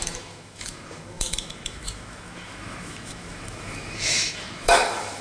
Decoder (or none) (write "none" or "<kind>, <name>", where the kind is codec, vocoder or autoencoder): autoencoder, DAC-VAE